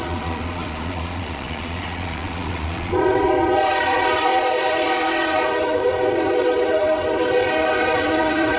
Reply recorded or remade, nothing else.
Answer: remade